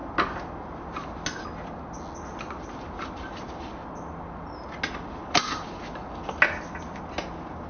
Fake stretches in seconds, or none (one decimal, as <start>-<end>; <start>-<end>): none